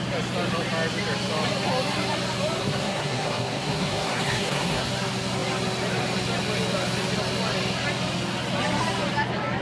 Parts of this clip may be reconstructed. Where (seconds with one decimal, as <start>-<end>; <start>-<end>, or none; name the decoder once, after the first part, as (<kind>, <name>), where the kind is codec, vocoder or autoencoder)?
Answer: 2.6-4.9 (codec, SNAC)